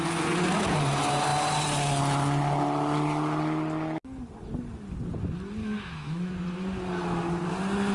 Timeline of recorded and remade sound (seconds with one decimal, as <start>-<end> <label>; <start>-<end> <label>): 0.0-5.6 recorded; 5.6-6.3 remade; 6.3-7.9 recorded